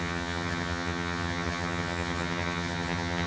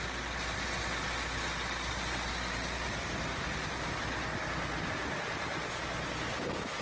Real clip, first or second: second